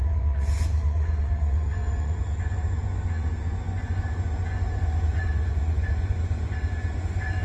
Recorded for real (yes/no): no